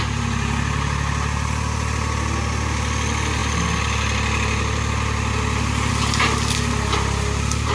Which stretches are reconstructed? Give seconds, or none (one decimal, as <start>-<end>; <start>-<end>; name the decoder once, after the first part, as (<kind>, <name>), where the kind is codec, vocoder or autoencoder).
none